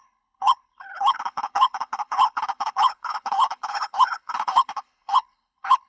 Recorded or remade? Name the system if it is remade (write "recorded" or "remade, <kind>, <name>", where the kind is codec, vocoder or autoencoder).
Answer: remade, codec, HILCodec